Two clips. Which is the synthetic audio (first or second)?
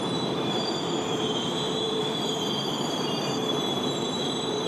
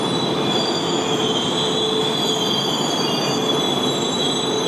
first